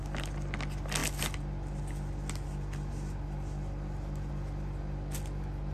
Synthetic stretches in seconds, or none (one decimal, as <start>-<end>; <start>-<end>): none